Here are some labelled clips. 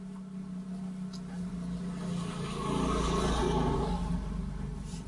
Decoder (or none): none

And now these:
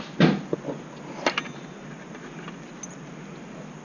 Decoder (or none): none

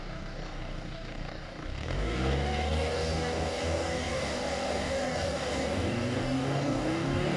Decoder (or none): codec, DAC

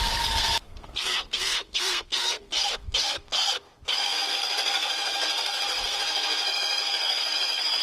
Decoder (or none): codec, SNAC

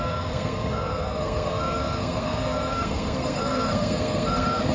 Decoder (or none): codec, SNAC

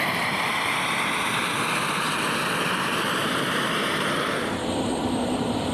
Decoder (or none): vocoder, BigVGAN v2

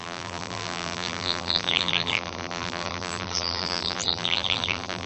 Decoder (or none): vocoder, BigVGAN v2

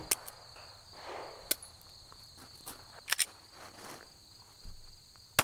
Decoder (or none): none